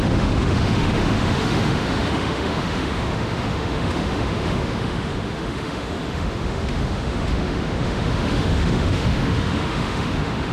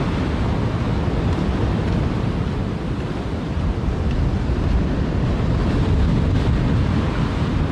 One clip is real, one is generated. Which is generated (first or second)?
first